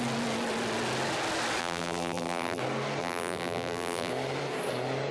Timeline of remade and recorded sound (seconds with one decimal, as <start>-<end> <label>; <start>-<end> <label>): 0.0-1.6 recorded; 1.6-2.6 remade; 2.6-3.0 recorded; 3.0-4.1 remade; 4.1-5.1 recorded